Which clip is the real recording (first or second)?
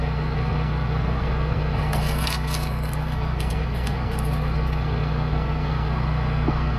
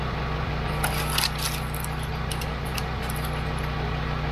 second